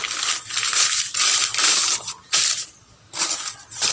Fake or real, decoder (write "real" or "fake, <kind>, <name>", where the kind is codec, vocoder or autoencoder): real